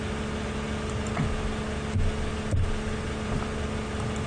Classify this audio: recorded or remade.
recorded